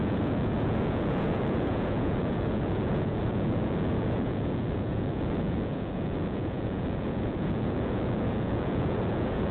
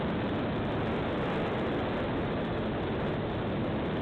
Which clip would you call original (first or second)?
second